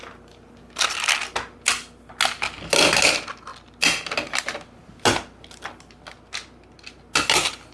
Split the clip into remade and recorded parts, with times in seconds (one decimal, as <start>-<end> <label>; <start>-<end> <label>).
0.0-7.7 recorded